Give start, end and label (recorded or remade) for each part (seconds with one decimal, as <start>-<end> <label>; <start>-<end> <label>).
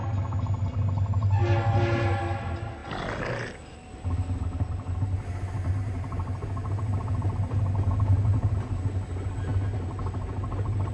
0.0-10.9 recorded